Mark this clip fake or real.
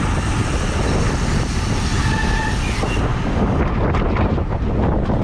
real